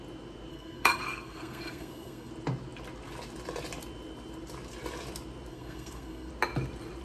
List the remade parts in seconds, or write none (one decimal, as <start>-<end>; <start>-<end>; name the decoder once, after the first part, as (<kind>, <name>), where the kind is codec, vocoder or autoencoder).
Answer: 0.5-2.3 (codec, SNAC); 5.5-6.3